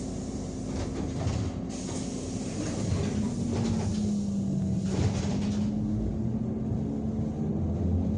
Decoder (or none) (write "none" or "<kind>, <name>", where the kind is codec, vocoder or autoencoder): none